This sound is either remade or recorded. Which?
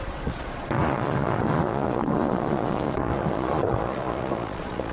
remade